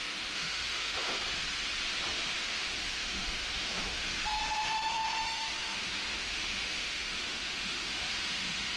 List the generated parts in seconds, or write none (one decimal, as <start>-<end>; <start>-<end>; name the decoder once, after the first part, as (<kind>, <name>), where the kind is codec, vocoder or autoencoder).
0.0-1.2 (autoencoder, DAC-VAE); 2.1-8.8